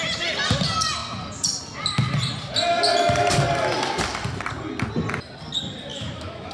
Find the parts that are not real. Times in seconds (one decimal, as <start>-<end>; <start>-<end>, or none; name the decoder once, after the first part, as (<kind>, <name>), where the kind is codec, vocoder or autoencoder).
5.9-6.5 (autoencoder, DAC-VAE)